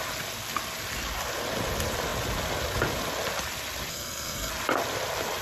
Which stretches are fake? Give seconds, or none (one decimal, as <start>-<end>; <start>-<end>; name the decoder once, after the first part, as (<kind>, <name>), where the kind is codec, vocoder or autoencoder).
3.9-4.5 (codec, SNAC)